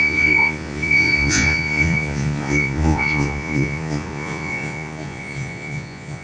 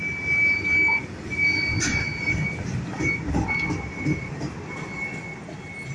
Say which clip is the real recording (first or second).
second